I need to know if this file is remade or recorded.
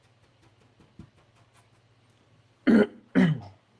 recorded